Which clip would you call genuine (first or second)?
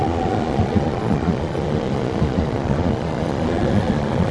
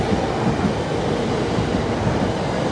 second